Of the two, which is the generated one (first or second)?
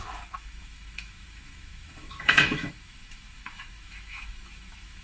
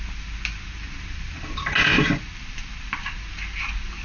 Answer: first